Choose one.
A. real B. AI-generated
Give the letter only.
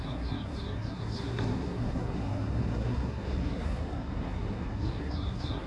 B